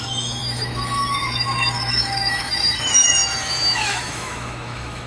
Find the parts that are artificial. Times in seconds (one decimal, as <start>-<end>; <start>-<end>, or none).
0.0-5.1